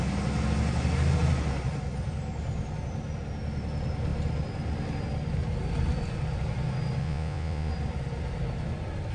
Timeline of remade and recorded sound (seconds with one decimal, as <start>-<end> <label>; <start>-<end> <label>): 0.0-7.0 recorded; 7.0-7.7 remade; 7.7-9.1 recorded